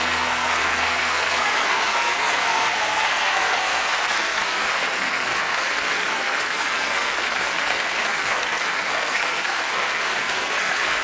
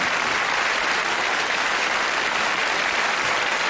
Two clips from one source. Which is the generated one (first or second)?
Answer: first